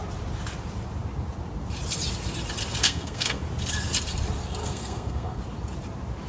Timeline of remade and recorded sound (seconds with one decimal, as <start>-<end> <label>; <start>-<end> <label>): 0.0-2.8 recorded; 2.8-3.4 remade; 3.4-4.6 recorded; 4.6-5.4 remade; 5.4-6.3 recorded